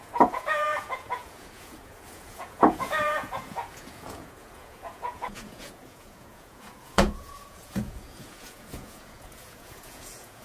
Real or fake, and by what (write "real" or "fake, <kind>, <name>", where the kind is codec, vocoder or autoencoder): fake, vocoder, Vocos